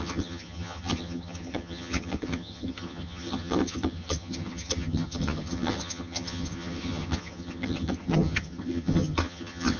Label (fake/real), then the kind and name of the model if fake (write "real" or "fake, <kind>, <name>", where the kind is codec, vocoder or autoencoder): fake, vocoder, HiFi-GAN